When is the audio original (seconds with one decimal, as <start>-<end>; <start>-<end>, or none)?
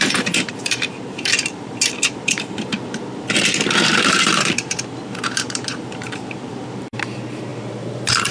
2.7-3.8